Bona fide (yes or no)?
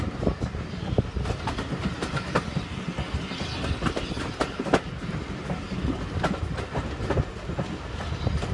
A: yes